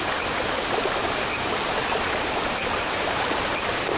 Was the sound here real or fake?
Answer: real